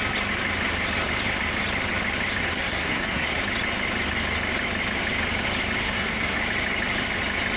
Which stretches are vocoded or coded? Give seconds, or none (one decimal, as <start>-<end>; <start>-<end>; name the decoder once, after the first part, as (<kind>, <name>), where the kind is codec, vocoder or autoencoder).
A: 2.4-3.4 (codec, SNAC); 5.8-6.4